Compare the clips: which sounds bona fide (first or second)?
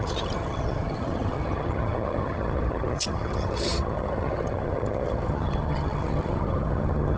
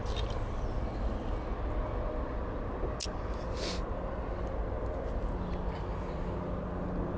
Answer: second